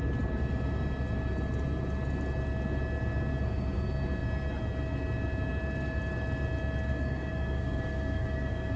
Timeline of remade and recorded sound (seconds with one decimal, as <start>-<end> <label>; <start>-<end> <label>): 0.0-6.9 recorded; 6.9-8.8 remade